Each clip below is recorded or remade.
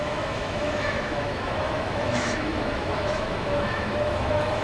remade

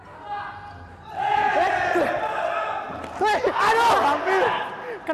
recorded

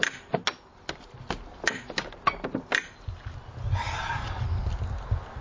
recorded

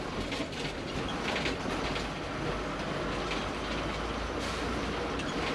recorded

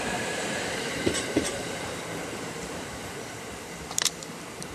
remade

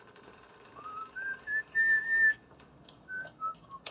remade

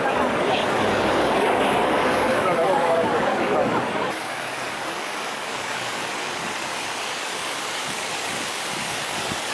remade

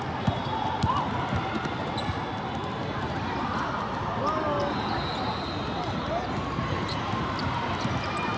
recorded